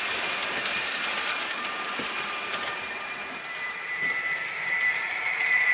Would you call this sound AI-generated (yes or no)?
yes